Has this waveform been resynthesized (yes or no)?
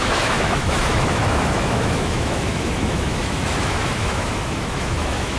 yes